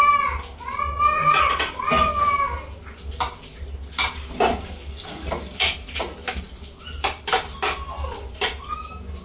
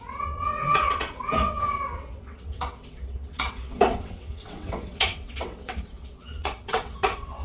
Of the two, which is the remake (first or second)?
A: second